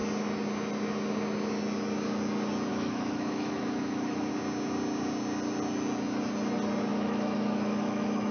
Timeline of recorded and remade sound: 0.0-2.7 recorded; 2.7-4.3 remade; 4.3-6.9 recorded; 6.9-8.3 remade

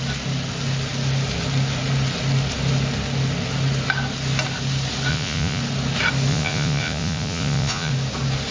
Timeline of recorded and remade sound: 0.0-5.1 recorded; 5.1-5.6 remade; 5.6-6.3 recorded; 6.3-7.9 remade; 7.9-8.5 recorded

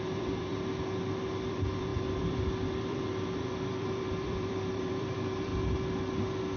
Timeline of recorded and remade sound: 0.0-0.5 remade; 0.5-1.5 recorded; 1.5-5.5 remade; 5.5-6.6 recorded

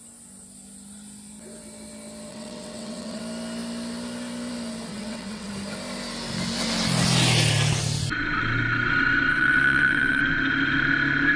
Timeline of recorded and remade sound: 0.0-2.3 recorded; 2.3-3.2 remade; 3.2-4.9 recorded; 4.9-5.5 remade; 5.5-9.3 recorded; 9.3-10.2 remade; 10.2-11.4 recorded